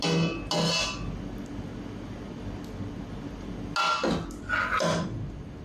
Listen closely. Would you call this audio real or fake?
real